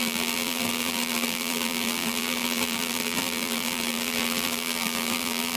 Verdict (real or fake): fake